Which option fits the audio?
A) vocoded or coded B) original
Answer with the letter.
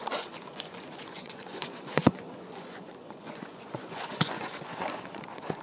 A